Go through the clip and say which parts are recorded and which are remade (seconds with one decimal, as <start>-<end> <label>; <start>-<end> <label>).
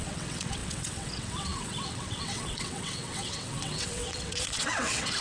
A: 0.0-5.2 remade